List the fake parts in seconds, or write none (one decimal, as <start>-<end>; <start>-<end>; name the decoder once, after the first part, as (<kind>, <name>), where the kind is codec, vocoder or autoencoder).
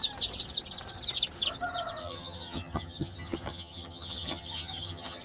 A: 2.0-5.2 (vocoder, HiFi-GAN)